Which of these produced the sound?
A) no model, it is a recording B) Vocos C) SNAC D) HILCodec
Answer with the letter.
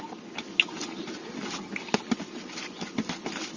A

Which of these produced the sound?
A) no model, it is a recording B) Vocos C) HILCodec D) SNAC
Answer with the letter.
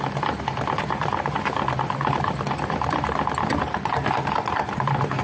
A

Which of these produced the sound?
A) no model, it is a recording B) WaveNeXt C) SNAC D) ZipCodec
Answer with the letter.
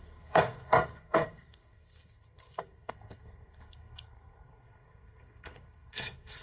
C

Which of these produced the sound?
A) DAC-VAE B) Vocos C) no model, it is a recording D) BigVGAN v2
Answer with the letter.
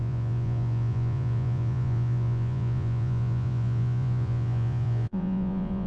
B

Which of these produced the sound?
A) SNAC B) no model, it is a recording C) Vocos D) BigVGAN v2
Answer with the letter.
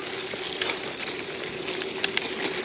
B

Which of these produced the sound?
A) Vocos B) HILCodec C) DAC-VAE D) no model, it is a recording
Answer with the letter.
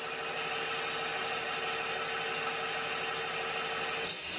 D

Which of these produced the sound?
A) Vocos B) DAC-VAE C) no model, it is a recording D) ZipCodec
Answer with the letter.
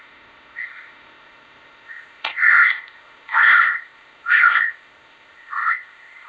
D